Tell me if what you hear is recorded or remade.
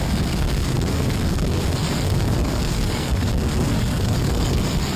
remade